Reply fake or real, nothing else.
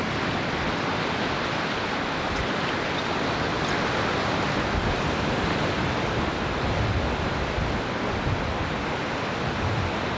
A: real